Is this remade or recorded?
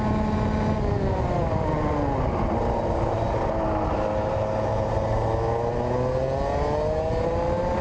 recorded